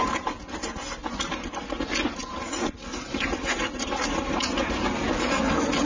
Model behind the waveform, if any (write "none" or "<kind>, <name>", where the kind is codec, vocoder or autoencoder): none